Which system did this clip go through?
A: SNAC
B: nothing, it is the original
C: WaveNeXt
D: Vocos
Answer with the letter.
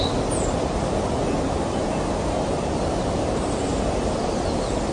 B